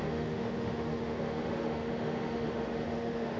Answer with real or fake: fake